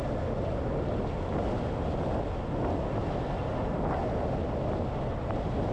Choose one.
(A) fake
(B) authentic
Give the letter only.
B